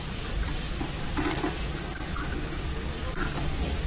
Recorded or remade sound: remade